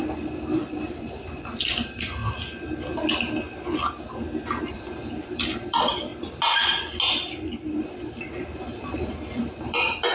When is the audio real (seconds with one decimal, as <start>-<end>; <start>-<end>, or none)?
2.2-4.7; 6.1-7.1